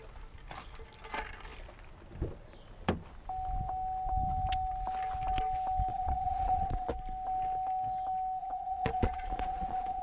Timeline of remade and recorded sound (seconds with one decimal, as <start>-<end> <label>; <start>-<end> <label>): 0.0-5.9 recorded; 5.9-6.9 remade; 6.9-8.4 recorded; 8.4-10.0 remade